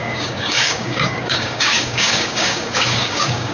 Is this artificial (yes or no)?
yes